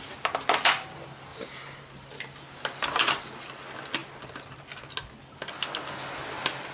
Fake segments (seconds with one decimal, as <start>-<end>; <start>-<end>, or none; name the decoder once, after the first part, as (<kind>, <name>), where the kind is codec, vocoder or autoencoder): 1.3-3.0 (vocoder, BigVGAN v2)